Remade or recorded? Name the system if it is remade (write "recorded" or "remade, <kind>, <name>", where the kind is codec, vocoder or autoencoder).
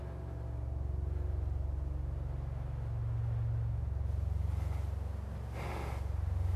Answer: recorded